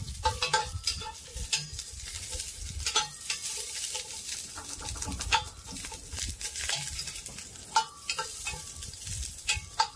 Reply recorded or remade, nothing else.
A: remade